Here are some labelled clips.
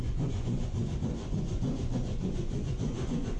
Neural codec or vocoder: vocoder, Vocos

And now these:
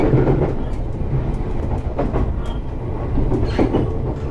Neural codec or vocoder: none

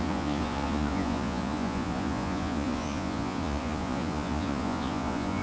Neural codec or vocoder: vocoder, Vocos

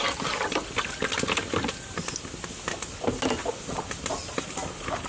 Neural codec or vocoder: none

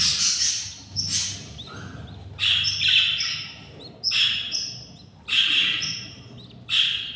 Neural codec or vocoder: none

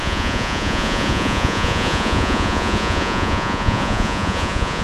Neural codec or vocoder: vocoder, Vocos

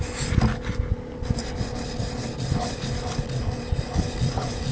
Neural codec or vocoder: none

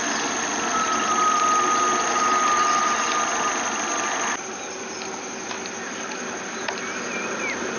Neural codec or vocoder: none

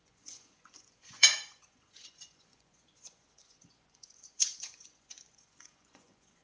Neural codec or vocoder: vocoder, Vocos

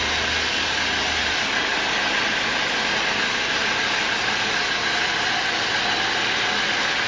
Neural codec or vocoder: none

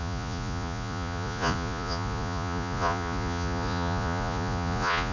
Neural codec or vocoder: vocoder, Vocos